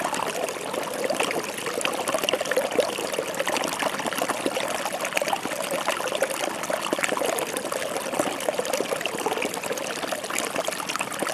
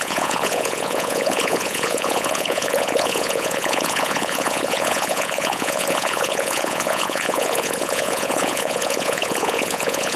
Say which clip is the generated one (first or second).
second